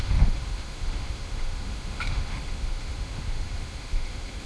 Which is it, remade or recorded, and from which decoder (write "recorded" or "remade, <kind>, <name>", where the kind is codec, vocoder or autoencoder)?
remade, autoencoder, DAC-VAE